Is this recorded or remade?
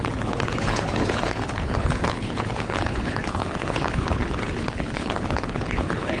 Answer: remade